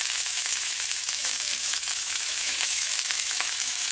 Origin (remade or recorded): remade